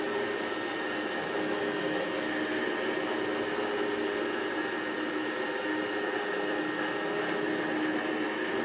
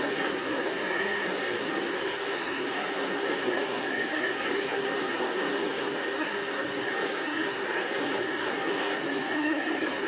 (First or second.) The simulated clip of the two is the second